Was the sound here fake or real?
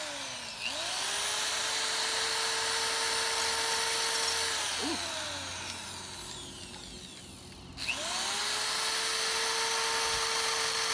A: real